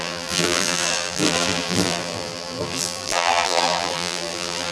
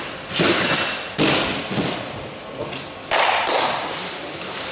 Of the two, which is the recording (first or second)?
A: second